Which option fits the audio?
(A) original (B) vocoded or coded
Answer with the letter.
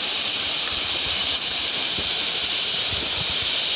B